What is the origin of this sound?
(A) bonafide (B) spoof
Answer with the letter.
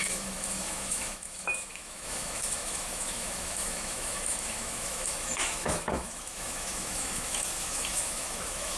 B